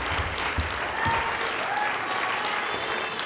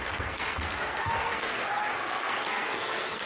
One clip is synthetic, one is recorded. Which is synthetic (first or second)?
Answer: second